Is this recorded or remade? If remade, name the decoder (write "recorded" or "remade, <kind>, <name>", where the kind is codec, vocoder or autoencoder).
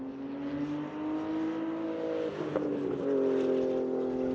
recorded